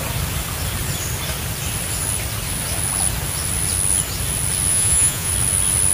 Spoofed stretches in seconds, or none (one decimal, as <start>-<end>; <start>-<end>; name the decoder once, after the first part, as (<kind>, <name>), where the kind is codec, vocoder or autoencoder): 4.7-5.3 (vocoder, Vocos)